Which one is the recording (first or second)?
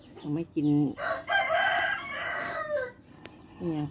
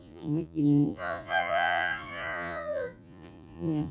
first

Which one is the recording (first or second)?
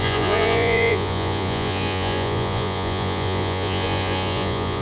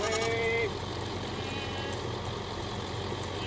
second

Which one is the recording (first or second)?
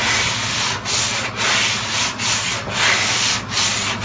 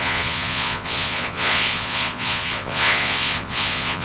first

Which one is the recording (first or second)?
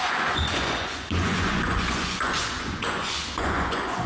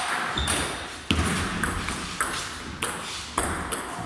second